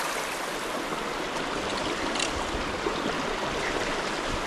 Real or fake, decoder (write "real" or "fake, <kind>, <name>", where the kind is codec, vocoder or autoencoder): real